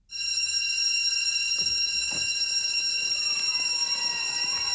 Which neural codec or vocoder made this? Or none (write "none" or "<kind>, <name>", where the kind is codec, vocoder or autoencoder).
none